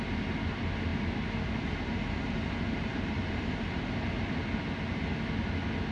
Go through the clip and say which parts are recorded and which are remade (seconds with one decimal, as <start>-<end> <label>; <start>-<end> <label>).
0.0-0.9 recorded; 0.9-2.5 remade; 2.5-2.9 recorded; 2.9-3.8 remade; 3.8-5.9 recorded